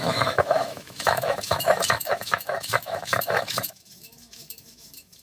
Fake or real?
fake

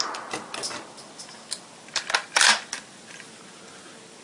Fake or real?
real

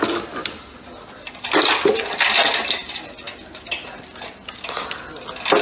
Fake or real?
real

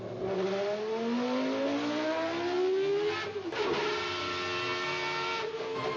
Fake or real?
real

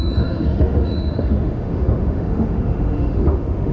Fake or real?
fake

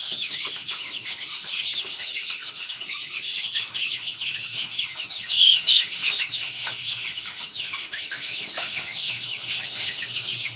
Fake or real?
fake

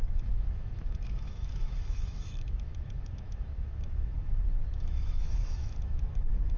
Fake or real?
fake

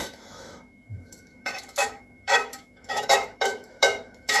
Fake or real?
fake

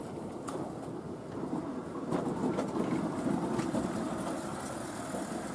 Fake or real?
real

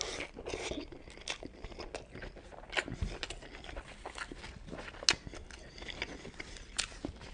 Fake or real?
real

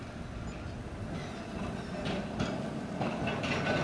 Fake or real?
real